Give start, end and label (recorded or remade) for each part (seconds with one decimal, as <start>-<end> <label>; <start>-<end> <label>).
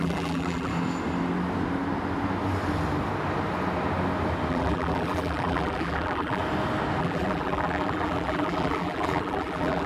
0.0-0.7 remade; 0.7-4.5 recorded; 4.5-6.4 remade; 6.4-7.0 recorded; 7.0-9.9 remade